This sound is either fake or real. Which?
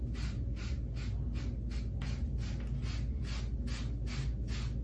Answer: real